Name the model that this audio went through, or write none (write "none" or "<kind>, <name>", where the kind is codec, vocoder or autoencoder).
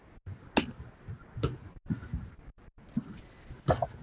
none